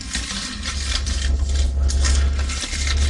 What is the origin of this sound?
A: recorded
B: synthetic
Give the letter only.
A